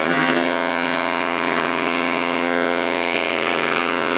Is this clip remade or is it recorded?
remade